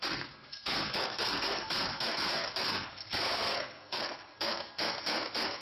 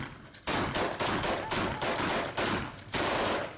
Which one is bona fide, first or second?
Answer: second